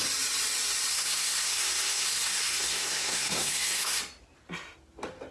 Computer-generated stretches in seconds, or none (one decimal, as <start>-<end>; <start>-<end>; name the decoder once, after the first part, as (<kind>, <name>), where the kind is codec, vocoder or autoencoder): 0.9-4.0 (codec, SNAC)